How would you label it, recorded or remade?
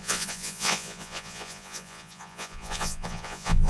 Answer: remade